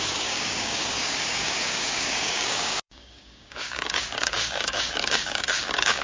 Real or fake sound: fake